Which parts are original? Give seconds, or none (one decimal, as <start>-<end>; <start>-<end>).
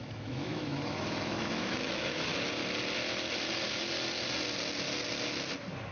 2.3-5.9